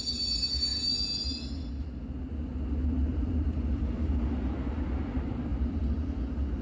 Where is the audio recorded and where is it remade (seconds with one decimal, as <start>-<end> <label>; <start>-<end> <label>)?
0.0-3.0 recorded; 3.0-3.8 remade; 3.8-5.5 recorded; 5.5-6.6 remade